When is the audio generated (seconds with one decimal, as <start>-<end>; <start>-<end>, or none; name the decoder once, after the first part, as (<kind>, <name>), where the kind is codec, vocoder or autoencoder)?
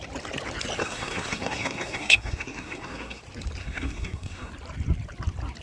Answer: 0.8-3.2 (codec, SNAC); 3.6-4.5